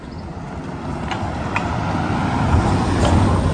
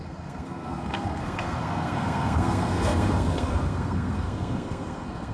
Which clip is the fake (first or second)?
second